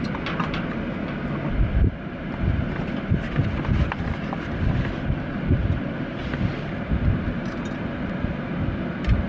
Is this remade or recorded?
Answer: recorded